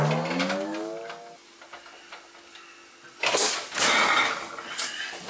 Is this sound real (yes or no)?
yes